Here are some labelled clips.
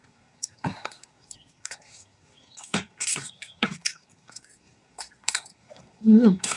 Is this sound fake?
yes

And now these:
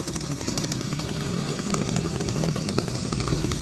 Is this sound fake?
yes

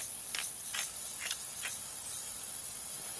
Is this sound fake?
no